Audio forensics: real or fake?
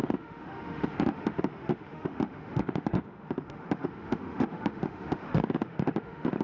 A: fake